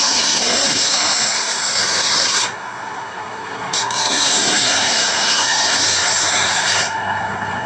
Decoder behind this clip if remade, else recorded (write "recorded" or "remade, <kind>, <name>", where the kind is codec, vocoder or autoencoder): remade, codec, SNAC